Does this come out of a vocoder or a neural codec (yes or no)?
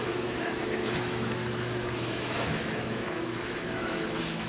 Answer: yes